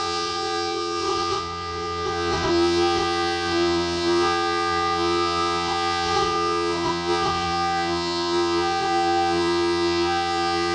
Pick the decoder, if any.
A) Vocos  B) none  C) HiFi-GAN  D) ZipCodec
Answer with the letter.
A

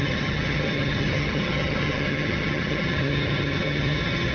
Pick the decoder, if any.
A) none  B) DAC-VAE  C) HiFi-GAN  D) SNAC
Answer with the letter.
C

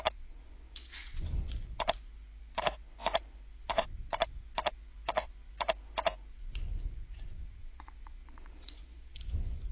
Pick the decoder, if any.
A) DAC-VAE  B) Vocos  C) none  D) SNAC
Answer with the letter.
B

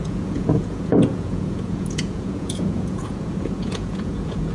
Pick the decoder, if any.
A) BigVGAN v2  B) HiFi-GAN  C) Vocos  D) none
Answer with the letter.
C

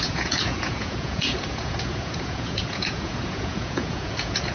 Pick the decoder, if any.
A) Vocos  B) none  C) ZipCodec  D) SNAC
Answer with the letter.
A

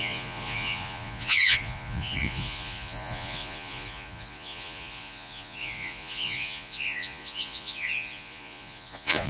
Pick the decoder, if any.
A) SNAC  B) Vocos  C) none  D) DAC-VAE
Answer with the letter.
B